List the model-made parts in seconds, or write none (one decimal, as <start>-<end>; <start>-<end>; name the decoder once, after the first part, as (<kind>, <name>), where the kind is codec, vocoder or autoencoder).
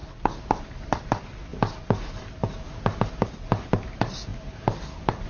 0.6-1.5 (vocoder, BigVGAN v2); 3.1-5.3